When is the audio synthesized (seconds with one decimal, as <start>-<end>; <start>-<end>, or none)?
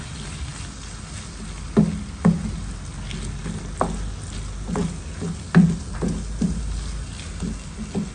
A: none